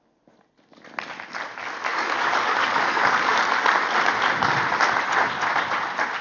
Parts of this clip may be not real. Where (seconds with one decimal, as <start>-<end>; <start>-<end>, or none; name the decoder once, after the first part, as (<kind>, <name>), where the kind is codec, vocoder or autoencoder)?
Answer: 1.9-3.4 (codec, DAC)